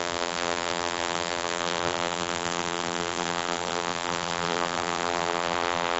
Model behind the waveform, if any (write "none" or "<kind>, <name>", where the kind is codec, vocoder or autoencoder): vocoder, BigVGAN v2